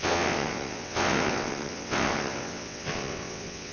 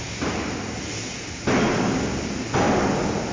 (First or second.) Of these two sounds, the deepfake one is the first